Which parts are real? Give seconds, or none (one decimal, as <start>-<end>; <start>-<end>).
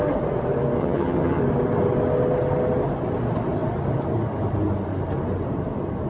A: 0.0-0.8; 1.4-6.1